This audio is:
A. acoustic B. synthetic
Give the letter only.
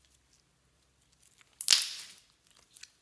A